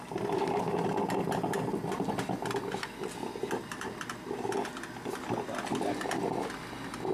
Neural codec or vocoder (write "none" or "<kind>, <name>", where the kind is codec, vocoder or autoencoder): none